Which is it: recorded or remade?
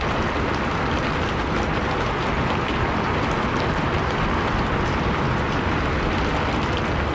recorded